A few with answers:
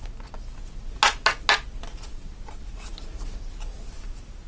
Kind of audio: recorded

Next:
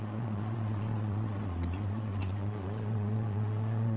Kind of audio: remade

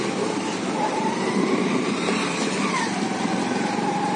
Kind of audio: recorded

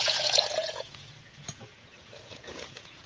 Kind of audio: remade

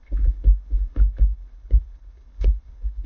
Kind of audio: remade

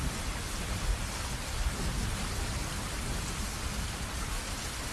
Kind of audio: recorded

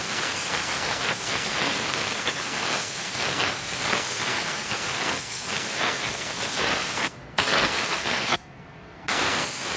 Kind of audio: remade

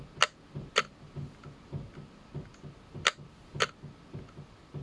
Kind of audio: recorded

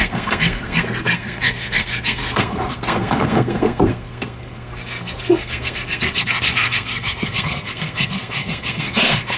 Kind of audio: remade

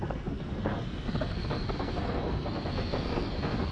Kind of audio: remade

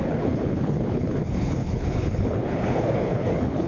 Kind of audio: remade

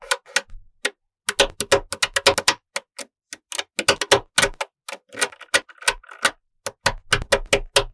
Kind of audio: recorded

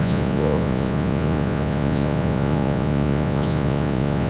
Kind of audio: remade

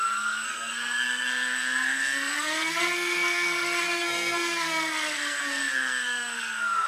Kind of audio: remade